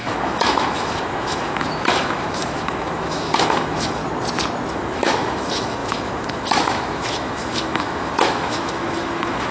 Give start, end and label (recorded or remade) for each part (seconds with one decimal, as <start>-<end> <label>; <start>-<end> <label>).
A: 0.0-4.0 remade; 4.0-4.7 recorded; 4.7-9.5 remade